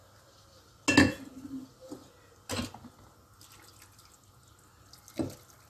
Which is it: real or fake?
real